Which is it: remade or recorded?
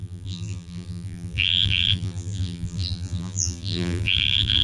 remade